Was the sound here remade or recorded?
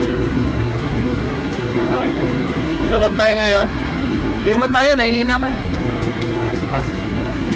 remade